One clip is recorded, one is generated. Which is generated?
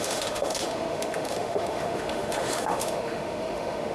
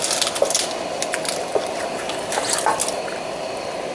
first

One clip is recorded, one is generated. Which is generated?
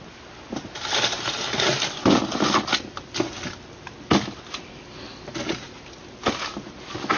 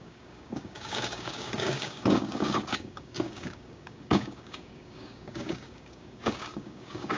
second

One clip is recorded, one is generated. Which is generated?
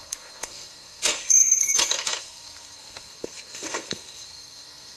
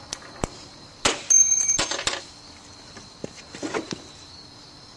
first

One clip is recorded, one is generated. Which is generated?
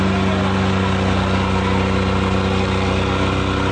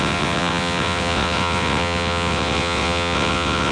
second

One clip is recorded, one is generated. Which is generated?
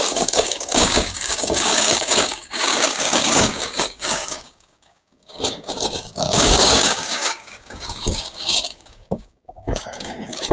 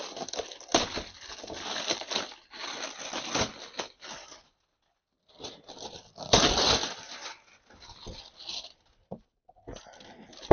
first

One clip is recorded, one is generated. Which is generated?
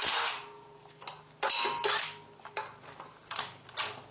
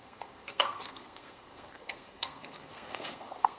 second